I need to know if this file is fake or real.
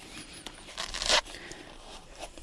fake